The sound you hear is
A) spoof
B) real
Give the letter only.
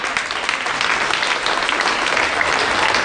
B